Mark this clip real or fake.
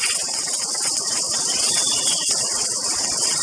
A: fake